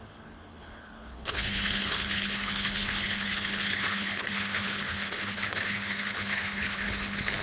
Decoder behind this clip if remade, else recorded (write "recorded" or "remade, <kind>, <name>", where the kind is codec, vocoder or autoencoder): remade, codec, HILCodec